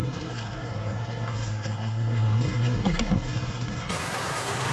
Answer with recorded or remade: remade